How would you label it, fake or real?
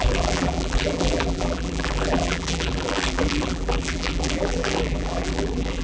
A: fake